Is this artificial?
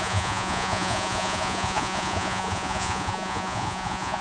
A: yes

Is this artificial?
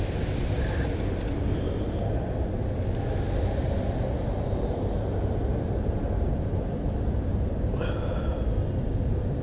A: no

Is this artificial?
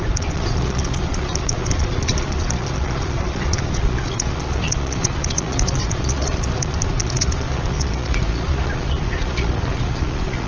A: yes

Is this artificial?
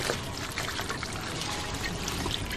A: no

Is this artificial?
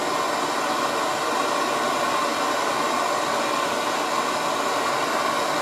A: no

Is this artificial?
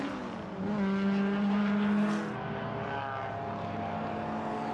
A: no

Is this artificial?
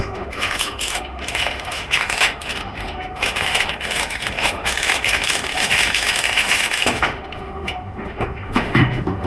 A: yes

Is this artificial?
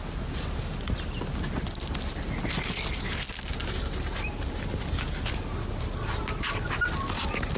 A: no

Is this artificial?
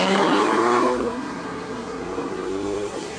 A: yes